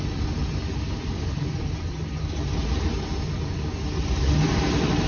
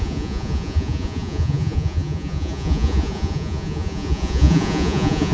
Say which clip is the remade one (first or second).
second